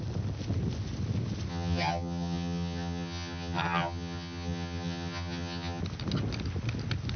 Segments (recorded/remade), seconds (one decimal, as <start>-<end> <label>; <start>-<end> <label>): 0.0-1.5 recorded; 1.5-5.8 remade; 5.8-7.2 recorded